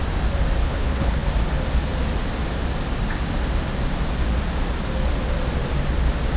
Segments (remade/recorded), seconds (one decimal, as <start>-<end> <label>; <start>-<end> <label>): 0.0-0.6 recorded; 0.6-1.3 remade; 1.3-6.4 recorded

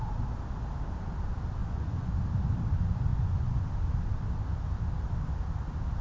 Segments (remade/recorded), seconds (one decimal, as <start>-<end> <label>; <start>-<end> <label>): 0.0-1.6 recorded; 1.6-2.2 remade; 2.2-3.1 recorded; 3.1-3.7 remade; 3.7-6.0 recorded

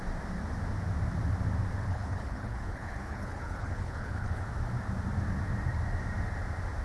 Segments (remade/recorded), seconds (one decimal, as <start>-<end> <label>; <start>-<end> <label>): 0.0-1.9 recorded; 1.9-4.4 remade; 4.4-6.8 recorded